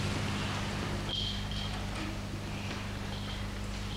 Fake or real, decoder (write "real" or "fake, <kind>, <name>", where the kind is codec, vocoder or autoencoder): real